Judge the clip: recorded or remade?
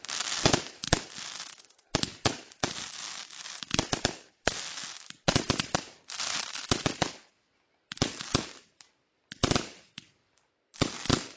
recorded